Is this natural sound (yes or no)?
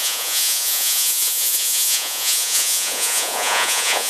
no